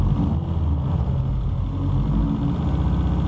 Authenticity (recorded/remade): recorded